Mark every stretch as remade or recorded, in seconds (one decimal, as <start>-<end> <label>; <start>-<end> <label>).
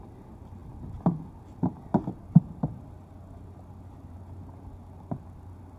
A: 0.0-5.8 recorded